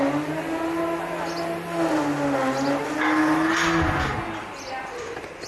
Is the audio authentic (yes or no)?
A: yes